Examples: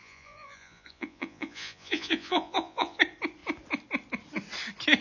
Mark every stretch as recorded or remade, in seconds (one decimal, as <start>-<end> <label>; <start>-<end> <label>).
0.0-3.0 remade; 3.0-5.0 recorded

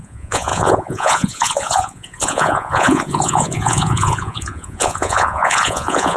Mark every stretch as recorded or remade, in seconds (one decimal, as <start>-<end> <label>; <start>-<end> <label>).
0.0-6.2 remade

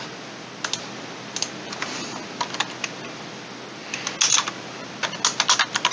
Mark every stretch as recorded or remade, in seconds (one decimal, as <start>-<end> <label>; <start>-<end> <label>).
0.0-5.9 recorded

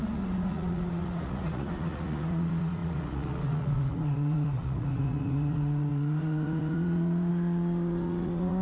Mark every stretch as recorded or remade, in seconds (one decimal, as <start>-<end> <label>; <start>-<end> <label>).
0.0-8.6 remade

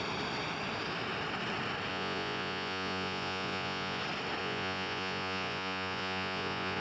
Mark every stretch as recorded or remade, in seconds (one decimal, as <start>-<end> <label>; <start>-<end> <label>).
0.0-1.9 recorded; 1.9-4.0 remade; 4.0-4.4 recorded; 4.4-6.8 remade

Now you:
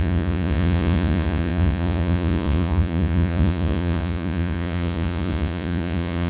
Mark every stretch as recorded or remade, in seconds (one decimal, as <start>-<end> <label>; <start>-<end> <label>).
0.0-6.3 remade

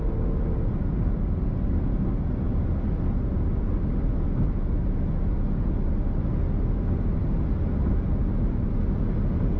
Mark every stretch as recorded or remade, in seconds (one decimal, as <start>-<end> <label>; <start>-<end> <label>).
0.0-9.6 recorded